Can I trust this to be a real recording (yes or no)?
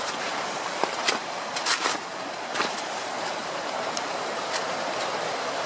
no